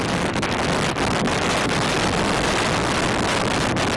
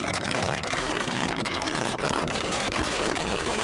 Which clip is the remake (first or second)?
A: second